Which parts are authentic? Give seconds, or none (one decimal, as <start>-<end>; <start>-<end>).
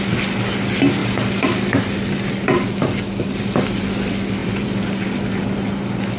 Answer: 0.0-4.4; 5.3-6.2